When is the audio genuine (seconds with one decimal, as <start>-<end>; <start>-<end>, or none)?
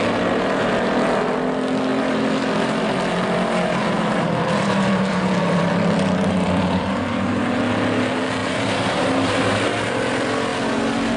0.0-1.9; 6.9-8.4; 9.4-11.2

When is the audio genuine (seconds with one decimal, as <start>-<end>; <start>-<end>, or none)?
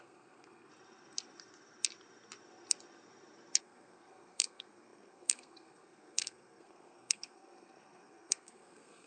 0.7-3.6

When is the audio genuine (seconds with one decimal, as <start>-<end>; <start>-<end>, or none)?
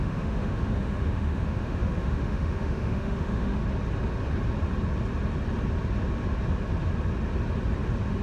3.6-8.2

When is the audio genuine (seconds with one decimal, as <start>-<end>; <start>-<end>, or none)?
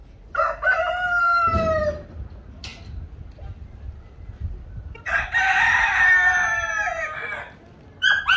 0.0-1.2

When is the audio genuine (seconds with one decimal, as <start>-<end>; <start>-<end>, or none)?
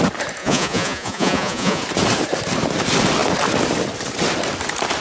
0.0-0.4; 1.8-5.0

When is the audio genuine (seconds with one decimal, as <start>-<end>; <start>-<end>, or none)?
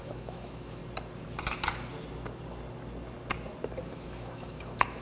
0.8-3.8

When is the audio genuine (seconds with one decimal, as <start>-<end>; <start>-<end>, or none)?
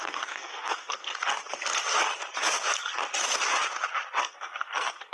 1.1-4.2